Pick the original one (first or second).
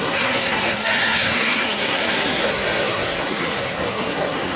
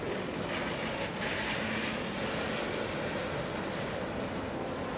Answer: second